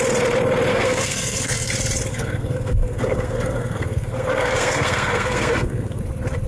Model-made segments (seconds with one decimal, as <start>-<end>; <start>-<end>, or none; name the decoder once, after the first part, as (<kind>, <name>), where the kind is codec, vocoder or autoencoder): 0.7-1.7 (codec, SNAC); 2.1-6.0